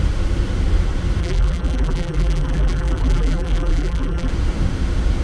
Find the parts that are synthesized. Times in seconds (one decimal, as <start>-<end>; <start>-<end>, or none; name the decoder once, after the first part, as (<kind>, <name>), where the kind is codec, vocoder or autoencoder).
1.2-4.3 (vocoder, BigVGAN v2)